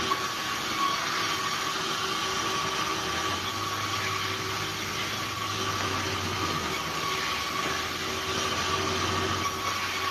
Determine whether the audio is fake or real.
real